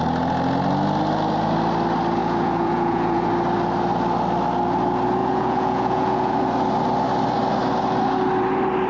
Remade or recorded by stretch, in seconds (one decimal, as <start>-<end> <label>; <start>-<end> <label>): 0.0-2.2 recorded; 2.2-3.3 remade; 3.3-5.2 recorded; 5.2-6.4 remade; 6.4-8.9 recorded